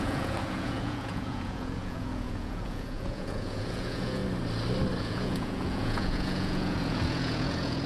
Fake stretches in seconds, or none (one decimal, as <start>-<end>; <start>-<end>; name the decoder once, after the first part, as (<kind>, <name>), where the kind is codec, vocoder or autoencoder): 0.0-4.2 (vocoder, Vocos); 5.0-7.9